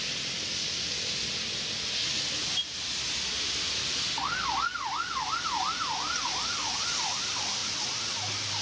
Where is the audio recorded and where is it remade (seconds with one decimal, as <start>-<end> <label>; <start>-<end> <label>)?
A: 0.0-8.6 recorded